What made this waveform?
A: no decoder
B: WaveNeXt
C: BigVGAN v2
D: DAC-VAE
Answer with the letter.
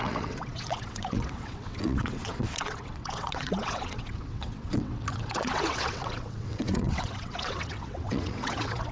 B